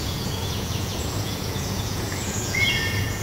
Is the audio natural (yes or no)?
no